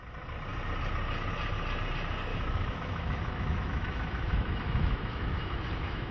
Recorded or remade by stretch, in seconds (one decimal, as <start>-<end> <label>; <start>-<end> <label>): 0.0-2.3 recorded; 2.3-6.1 remade